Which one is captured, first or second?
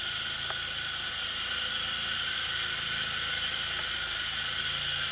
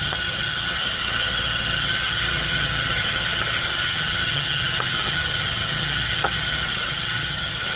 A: first